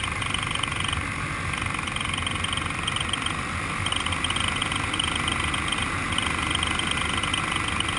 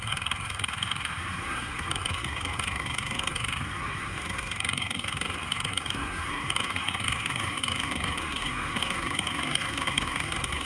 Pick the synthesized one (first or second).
second